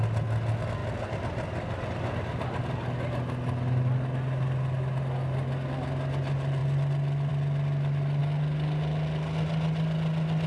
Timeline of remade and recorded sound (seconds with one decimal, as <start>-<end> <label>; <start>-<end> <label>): 0.0-10.5 recorded